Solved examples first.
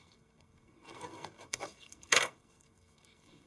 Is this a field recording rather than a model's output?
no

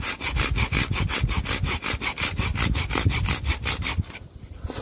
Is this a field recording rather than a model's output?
yes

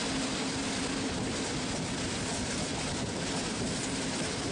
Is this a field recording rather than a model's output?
yes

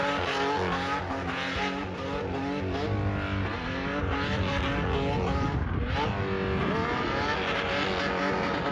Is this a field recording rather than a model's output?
yes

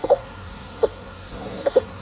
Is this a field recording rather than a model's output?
no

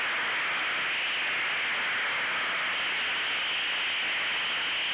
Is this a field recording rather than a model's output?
yes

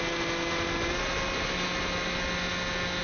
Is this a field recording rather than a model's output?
yes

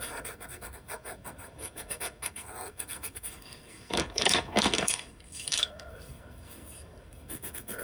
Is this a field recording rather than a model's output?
no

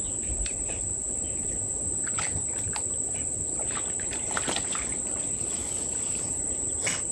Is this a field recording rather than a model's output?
yes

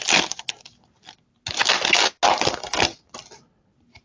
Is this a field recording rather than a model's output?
yes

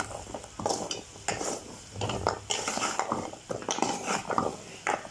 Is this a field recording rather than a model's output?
yes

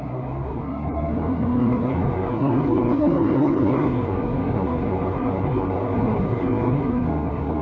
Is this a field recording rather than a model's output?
no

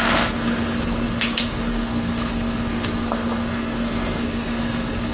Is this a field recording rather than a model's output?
no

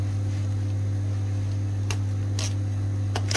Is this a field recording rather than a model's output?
yes